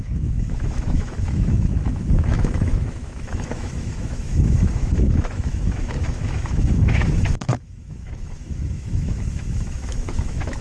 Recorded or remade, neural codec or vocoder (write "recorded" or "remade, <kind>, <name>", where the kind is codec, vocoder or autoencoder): remade, autoencoder, DAC-VAE